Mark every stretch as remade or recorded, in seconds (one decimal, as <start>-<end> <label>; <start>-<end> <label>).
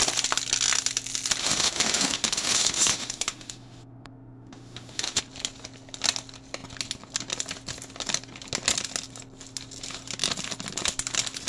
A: 0.0-1.4 recorded; 1.4-5.2 remade; 5.2-11.5 recorded